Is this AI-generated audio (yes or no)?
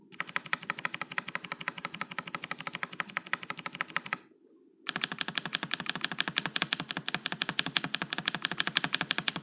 no